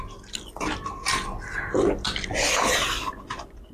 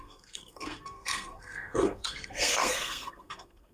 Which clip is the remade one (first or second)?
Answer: second